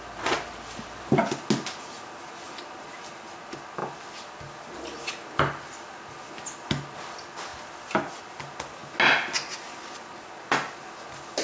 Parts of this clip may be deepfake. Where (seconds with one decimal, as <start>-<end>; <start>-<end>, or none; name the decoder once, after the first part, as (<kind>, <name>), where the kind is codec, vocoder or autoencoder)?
none